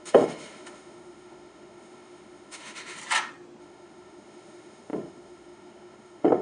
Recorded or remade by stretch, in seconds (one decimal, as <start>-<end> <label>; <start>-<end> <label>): 0.0-3.0 remade; 3.0-3.6 recorded; 3.6-6.4 remade